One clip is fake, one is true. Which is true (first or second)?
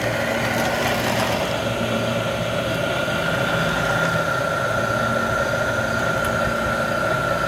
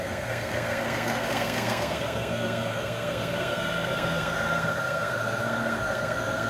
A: first